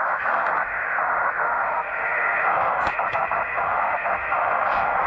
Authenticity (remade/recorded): remade